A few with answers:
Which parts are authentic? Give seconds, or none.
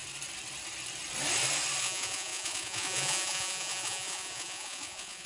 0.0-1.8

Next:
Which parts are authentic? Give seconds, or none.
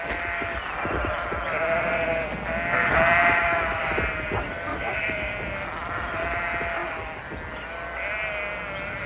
0.0-3.2; 3.8-4.7; 5.3-9.1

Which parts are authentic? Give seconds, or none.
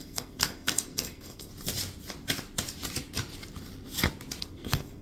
1.5-4.4